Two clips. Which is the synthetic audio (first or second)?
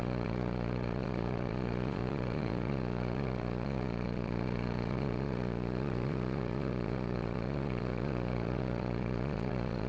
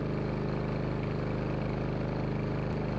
first